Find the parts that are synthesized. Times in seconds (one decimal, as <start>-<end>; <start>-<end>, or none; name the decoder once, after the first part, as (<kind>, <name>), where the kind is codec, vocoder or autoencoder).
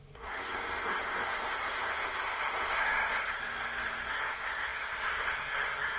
0.0-3.4 (codec, SNAC); 4.1-6.0